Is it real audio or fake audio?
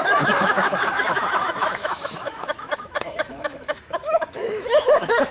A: fake